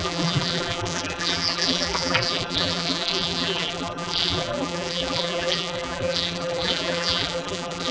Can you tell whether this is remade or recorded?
remade